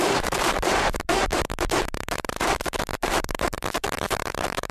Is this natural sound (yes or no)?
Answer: no